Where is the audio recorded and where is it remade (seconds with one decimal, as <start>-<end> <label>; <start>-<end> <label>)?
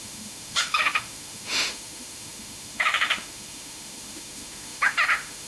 0.0-5.5 remade